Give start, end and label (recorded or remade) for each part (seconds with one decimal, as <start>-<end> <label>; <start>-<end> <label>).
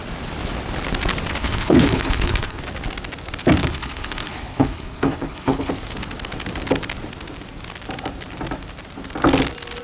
0.0-1.4 recorded; 1.4-2.6 remade; 2.6-3.6 recorded; 3.6-5.7 remade; 5.7-9.8 recorded